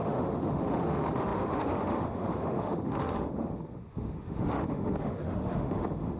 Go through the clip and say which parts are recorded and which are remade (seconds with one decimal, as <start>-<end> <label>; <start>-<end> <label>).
0.0-6.2 remade